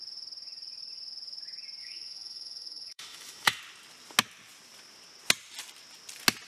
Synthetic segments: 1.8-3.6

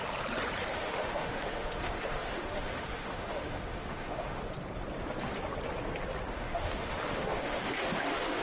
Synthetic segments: 0.7-4.5; 6.3-8.4

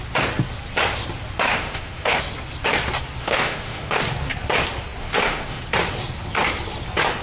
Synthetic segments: 1.5-2.2; 3.2-4.0; 5.0-5.6

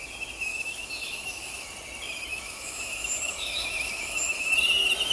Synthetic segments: 0.5-1.7; 2.3-4.5

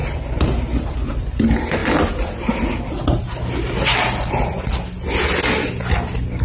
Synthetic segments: none

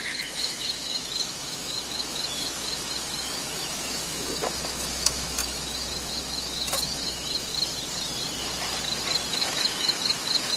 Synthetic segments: 0.0-7.5; 9.3-10.6

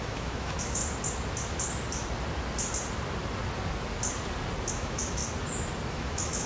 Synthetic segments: 0.0-0.8; 4.7-5.2; 5.9-6.5

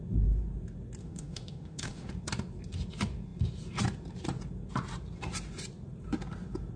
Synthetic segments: 1.0-2.1